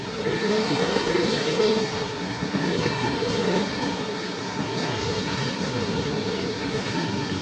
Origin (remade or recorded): remade